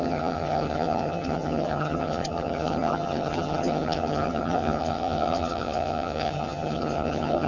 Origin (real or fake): fake